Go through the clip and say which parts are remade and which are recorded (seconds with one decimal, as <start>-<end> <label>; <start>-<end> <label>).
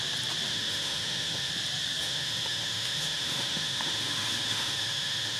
0.0-0.5 recorded; 0.5-1.5 remade; 1.5-2.0 recorded; 2.0-5.4 remade